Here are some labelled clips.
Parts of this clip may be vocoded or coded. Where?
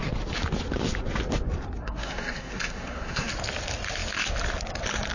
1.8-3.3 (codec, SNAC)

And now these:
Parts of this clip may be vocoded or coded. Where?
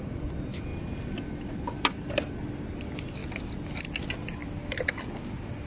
none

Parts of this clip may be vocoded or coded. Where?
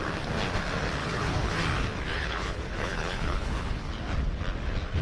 1.0-1.5 (codec, HILCodec); 2.1-3.8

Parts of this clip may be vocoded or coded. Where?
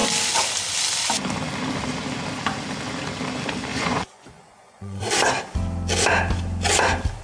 3.7-5.1 (vocoder, Vocos)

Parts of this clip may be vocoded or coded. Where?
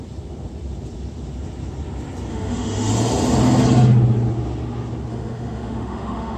2.3-2.9 (autoencoder, DAC-VAE); 5.1-6.4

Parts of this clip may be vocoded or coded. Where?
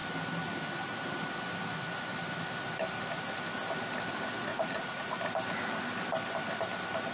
4.5-5.2 (vocoder, Vocos)